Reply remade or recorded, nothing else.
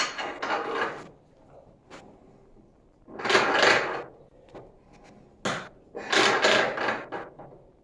recorded